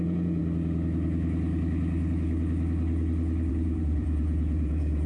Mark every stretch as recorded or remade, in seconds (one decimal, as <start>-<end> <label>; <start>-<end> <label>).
0.0-0.4 remade; 0.4-3.5 recorded; 3.5-5.1 remade